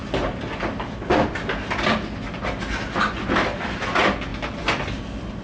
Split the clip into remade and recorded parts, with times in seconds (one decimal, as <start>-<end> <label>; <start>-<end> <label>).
0.0-5.4 recorded